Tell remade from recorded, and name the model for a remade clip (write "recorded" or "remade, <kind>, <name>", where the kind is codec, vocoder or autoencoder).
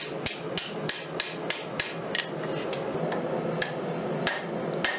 recorded